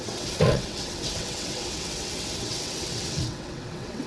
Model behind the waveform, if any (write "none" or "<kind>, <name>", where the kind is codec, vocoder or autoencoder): vocoder, WaveNeXt